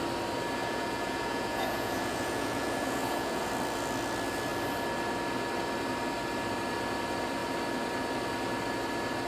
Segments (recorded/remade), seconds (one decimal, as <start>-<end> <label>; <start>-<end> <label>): 0.0-0.6 recorded; 0.6-3.5 remade; 3.5-9.3 recorded